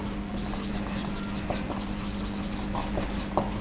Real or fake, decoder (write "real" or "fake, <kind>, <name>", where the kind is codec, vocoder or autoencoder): real